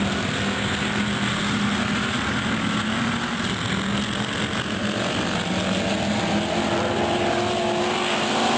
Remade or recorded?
recorded